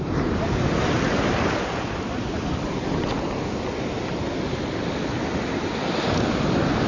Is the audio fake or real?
real